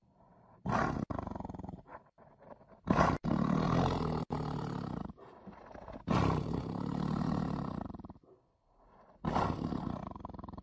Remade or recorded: recorded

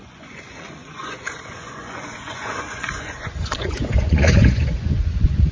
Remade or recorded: remade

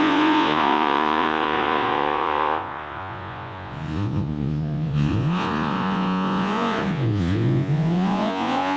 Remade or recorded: remade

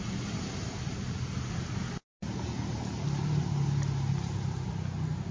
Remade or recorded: recorded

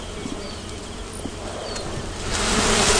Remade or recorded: recorded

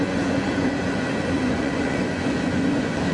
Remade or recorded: remade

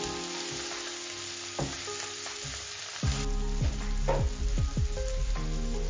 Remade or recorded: recorded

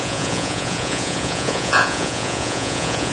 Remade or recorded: remade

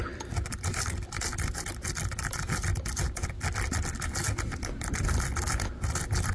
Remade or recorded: recorded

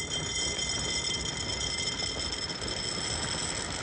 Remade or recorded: recorded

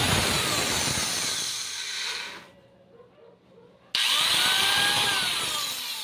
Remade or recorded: recorded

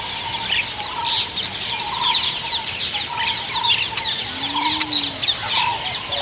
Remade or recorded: recorded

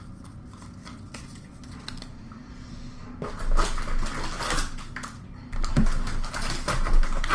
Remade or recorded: recorded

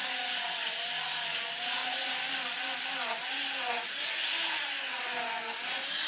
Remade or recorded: recorded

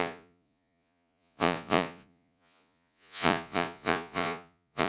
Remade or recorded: remade